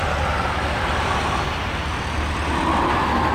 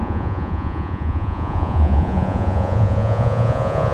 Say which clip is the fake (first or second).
second